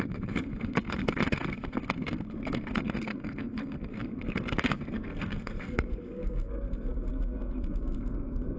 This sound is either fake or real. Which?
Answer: fake